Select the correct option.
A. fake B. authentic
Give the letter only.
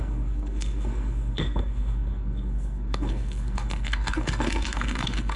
A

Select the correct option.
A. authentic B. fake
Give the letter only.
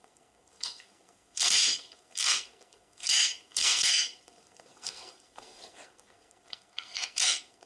B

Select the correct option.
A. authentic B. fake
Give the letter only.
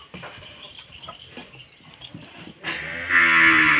A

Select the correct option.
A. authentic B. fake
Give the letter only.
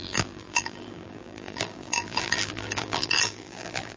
B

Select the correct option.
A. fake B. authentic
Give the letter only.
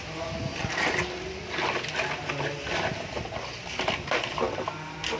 B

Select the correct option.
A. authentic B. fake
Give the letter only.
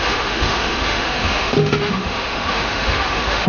B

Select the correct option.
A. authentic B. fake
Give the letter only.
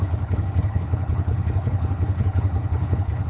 B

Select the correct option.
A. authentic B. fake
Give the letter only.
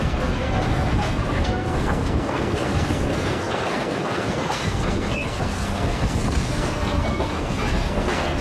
B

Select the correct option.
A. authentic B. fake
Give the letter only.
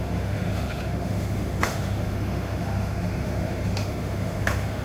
B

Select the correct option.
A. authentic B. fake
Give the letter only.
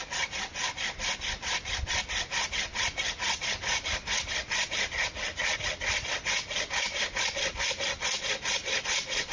A